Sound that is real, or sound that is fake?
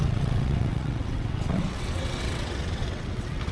fake